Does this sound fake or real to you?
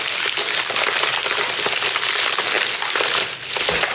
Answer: real